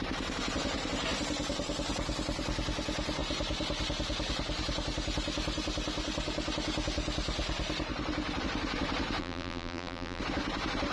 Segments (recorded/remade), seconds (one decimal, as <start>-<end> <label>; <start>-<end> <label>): 0.0-9.2 recorded; 9.2-10.2 remade; 10.2-10.9 recorded